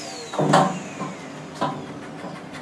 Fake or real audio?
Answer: real